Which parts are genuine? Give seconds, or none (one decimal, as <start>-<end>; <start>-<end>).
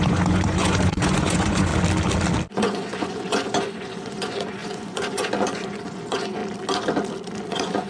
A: 1.7-2.5; 6.4-7.5